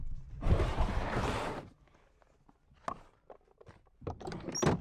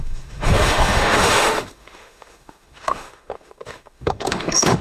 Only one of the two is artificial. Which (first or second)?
second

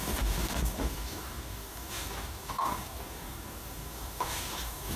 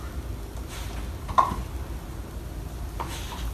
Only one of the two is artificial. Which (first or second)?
first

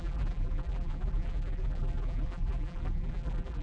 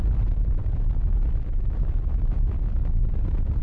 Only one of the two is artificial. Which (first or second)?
first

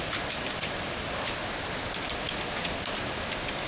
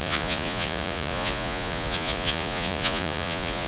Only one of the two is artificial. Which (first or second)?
second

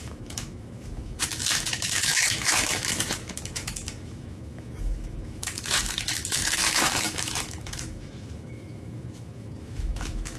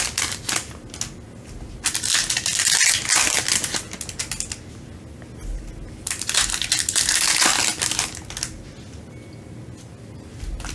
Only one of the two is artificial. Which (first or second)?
first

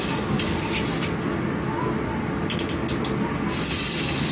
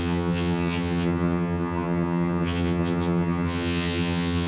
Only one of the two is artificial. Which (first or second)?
second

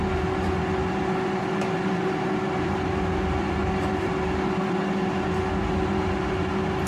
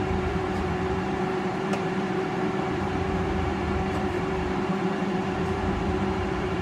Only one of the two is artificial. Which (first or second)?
second